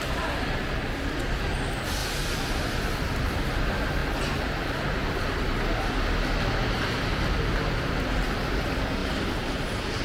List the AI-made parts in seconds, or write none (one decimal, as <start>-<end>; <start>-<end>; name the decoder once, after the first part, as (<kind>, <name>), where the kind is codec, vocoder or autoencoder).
2.0-3.0 (vocoder, BigVGAN v2)